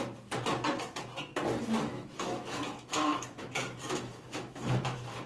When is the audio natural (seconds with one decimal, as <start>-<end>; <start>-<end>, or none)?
0.0-1.9